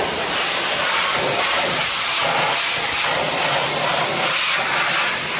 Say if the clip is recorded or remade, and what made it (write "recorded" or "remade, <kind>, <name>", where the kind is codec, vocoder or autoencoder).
remade, vocoder, BigVGAN v2